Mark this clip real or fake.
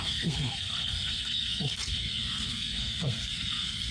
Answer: fake